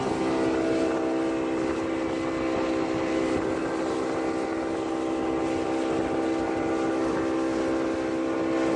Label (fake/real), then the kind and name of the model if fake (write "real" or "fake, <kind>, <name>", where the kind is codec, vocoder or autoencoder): real